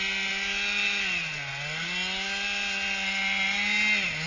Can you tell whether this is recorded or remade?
recorded